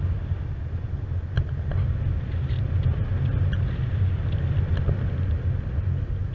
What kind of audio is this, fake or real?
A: real